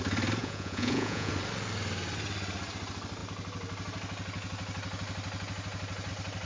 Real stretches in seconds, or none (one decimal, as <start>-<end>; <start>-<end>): 0.0-0.4; 1.3-6.5